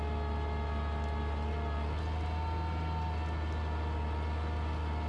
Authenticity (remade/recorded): recorded